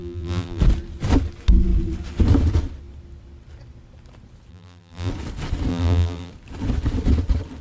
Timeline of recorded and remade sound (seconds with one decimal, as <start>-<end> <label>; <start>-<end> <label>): 0.0-0.6 remade; 0.6-4.5 recorded; 4.5-5.1 remade; 5.1-5.7 recorded; 5.7-6.3 remade; 6.3-7.6 recorded